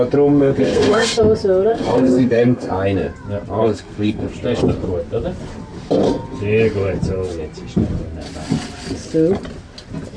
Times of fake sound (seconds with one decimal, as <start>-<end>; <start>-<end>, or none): 0.4-1.2; 1.7-2.7; 3.6-4.3